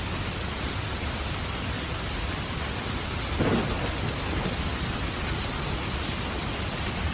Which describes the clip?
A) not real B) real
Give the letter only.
B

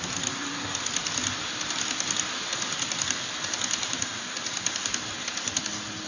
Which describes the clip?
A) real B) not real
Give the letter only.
A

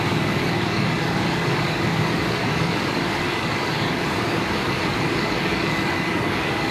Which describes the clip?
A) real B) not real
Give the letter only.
B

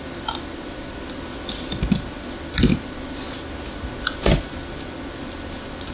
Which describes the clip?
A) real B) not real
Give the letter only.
A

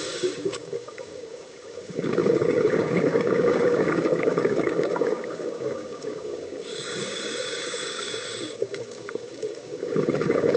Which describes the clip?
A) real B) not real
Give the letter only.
B